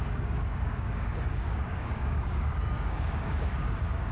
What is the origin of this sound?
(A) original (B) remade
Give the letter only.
B